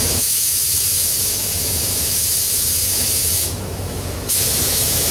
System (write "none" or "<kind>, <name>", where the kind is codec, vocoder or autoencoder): autoencoder, DAC-VAE